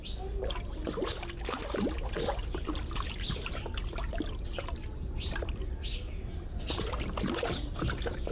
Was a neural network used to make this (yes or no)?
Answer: no